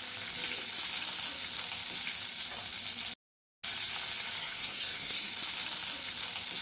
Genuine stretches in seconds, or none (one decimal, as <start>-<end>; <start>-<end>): 0.0-4.4; 5.3-6.6